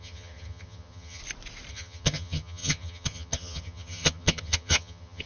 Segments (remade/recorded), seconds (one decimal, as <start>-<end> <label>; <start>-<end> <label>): 0.0-1.2 remade; 1.2-1.7 recorded; 1.7-5.3 remade